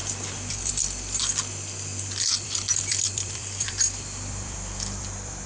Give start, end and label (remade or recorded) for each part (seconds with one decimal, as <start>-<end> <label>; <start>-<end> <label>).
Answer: 0.0-0.6 remade; 0.6-2.3 recorded; 2.3-5.5 remade